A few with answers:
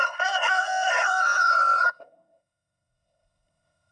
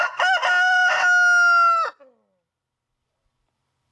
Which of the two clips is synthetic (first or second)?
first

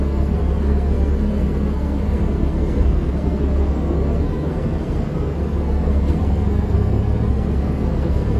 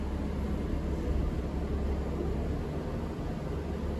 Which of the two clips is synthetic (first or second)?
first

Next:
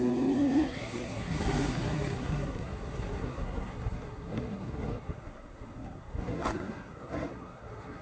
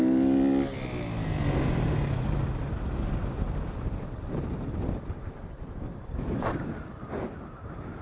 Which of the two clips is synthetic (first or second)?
first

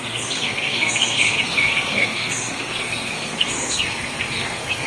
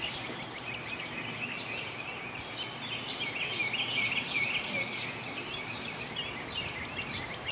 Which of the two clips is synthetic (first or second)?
first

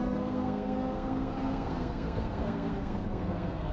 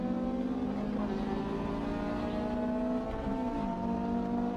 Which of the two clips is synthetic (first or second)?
first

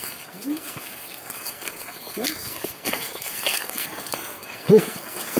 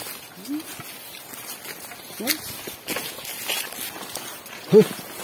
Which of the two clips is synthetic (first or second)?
first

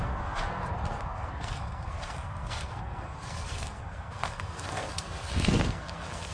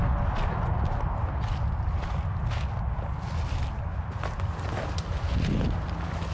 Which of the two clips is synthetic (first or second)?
first